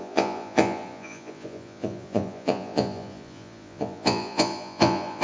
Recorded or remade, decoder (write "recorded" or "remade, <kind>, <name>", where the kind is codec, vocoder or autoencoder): remade, vocoder, Vocos